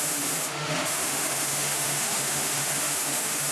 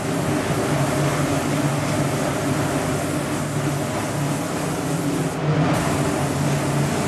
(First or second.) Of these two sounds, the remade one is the first